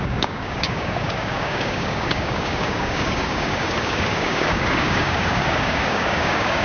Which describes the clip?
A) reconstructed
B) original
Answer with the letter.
A